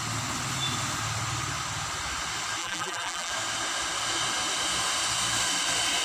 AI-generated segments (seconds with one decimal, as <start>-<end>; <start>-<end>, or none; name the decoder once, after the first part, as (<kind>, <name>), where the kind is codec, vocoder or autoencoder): 2.6-3.3 (vocoder, BigVGAN v2)